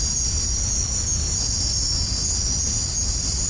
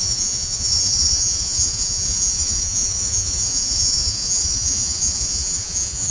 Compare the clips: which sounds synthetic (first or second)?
second